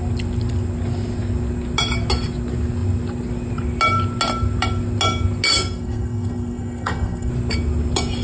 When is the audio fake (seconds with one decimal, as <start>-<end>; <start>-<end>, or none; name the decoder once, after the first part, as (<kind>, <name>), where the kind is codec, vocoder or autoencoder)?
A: 5.5-7.3 (codec, SNAC)

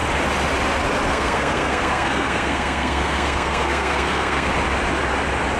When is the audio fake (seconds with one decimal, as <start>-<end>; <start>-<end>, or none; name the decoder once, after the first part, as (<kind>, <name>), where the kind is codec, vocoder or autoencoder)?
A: 1.1-4.5 (codec, SNAC)